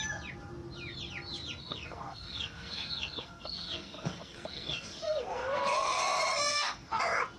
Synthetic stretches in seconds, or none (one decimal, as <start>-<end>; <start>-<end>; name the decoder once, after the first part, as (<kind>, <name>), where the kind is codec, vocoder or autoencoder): 1.6-6.0 (codec, SNAC); 6.5-7.0